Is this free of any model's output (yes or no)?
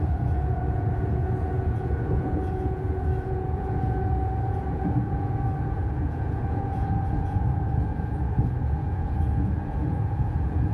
no